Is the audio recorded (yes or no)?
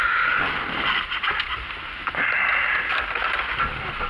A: yes